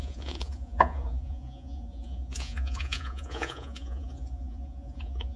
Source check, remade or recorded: remade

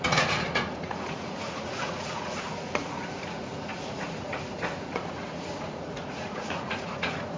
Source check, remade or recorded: remade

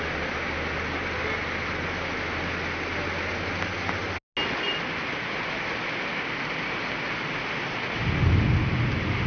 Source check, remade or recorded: recorded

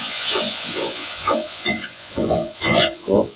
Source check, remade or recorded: remade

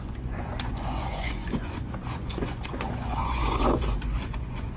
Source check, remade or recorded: remade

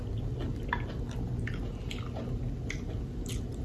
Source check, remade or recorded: recorded